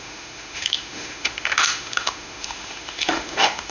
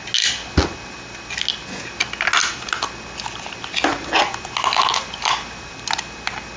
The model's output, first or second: first